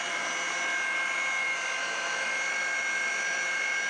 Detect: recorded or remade recorded